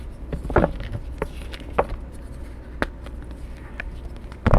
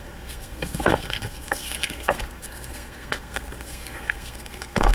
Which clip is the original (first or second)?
first